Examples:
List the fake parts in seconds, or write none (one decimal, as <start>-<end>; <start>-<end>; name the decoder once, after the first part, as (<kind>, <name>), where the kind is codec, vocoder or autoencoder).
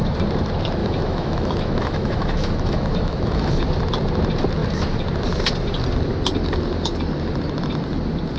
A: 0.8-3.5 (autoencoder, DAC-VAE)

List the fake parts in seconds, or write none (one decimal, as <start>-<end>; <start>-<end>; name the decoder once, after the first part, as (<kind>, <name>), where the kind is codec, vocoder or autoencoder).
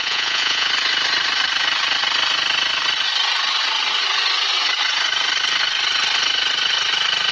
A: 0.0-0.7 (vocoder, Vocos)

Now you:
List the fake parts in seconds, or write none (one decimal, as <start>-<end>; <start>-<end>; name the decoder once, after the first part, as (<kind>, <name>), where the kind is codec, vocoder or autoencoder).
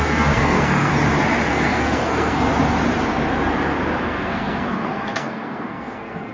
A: 0.0-0.9 (codec, SNAC); 1.5-2.5; 4.0-6.3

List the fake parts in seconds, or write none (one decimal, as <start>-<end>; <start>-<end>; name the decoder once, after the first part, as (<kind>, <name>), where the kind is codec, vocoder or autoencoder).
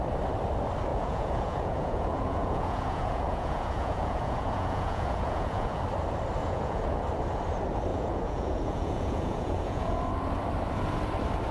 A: 0.9-5.8 (vocoder, Vocos); 6.4-7.0; 7.9-10.0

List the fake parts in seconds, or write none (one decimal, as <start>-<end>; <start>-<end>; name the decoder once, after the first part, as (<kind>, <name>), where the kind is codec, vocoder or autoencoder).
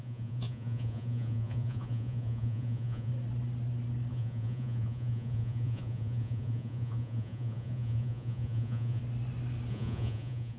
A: 0.0-3.1 (vocoder, Vocos); 4.1-9.0; 9.7-10.6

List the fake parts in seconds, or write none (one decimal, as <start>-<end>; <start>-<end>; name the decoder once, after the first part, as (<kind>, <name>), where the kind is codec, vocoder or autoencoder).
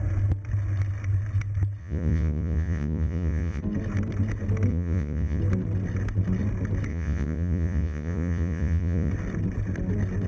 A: 1.8-3.6 (vocoder, Vocos); 4.7-5.4; 6.9-9.1